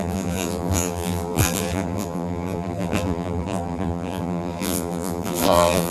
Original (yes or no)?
no